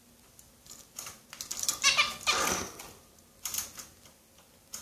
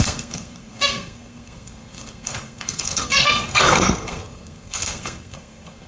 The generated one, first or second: second